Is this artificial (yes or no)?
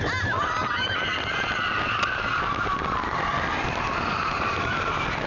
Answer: no